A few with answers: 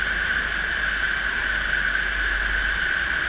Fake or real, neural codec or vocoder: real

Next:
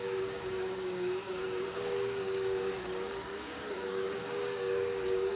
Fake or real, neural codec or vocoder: fake, codec, DAC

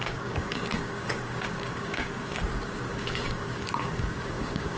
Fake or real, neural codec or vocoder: fake, codec, DAC